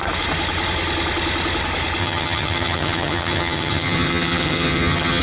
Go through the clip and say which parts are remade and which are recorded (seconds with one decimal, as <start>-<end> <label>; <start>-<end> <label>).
0.0-2.0 recorded; 2.0-5.2 remade

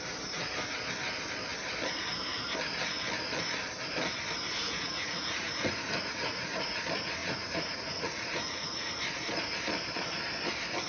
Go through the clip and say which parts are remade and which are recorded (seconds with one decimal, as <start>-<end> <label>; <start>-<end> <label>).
0.0-4.6 recorded; 4.6-6.8 remade; 6.8-7.2 recorded; 7.2-8.9 remade; 8.9-10.9 recorded

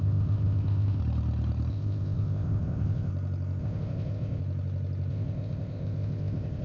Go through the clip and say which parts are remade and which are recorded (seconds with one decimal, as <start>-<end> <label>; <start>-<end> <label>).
0.0-1.0 remade; 1.0-1.7 recorded; 1.7-3.1 remade; 3.1-3.6 recorded; 3.6-4.4 remade; 4.4-5.1 recorded; 5.1-6.6 remade

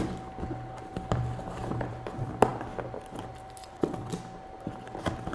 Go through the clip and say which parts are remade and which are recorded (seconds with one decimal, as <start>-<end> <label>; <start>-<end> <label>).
0.0-3.6 recorded; 3.6-4.1 remade; 4.1-5.3 recorded

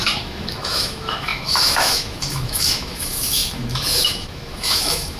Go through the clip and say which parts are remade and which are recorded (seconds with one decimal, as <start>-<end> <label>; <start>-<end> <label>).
0.0-5.2 remade

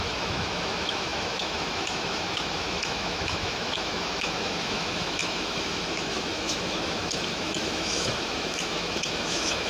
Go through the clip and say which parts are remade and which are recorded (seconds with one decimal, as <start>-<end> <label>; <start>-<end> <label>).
0.0-9.7 remade